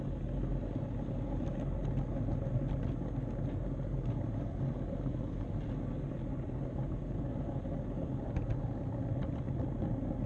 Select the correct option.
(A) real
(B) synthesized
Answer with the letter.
A